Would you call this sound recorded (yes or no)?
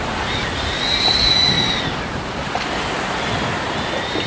yes